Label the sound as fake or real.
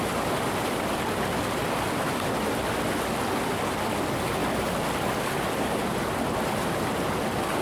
real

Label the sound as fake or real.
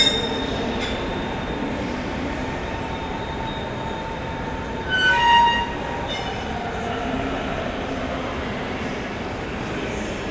real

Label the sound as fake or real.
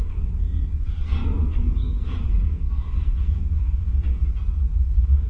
fake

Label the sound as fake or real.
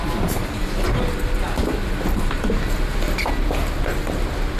real